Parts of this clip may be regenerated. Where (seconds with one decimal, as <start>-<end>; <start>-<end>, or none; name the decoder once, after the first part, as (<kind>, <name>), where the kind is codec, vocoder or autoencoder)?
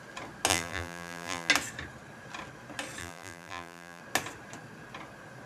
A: 0.5-1.5 (vocoder, BigVGAN v2); 3.0-4.0